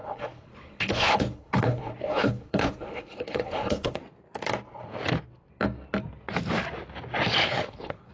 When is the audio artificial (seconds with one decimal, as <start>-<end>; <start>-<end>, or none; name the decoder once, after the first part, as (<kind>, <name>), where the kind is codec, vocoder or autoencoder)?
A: 0.0-4.0 (codec, HILCodec); 7.4-8.1